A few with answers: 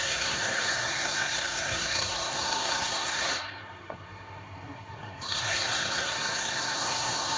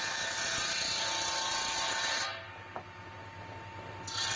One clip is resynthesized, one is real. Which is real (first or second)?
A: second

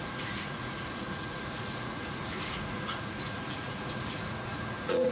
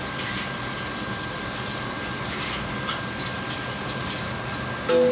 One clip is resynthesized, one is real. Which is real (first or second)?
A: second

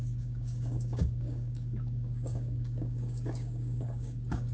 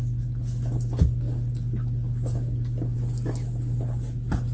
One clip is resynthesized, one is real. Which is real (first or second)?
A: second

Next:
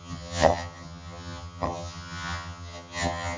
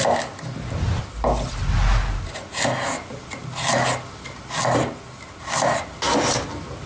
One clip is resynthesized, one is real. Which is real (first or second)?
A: second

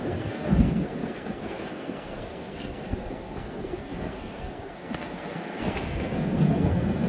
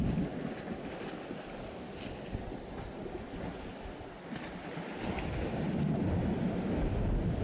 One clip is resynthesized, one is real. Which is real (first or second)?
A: second